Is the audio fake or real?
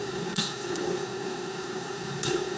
fake